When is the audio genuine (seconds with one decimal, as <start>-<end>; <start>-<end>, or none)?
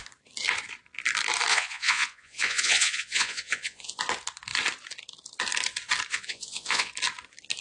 0.0-1.5; 4.0-6.1; 6.9-7.6